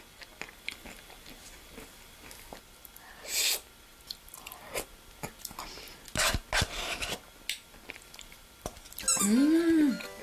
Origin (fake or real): real